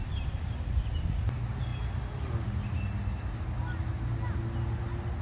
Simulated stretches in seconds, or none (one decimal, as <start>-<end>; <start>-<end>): none